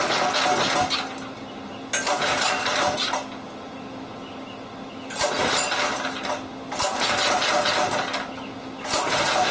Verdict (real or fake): real